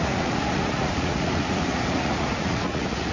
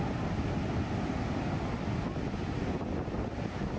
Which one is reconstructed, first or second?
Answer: first